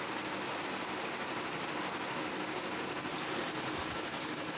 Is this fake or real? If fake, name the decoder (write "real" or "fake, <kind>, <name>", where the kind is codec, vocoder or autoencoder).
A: real